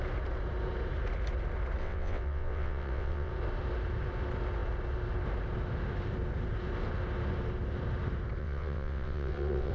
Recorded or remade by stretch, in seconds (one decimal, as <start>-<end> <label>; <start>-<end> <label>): 0.0-1.8 recorded; 1.8-3.3 remade; 3.3-8.4 recorded; 8.4-9.7 remade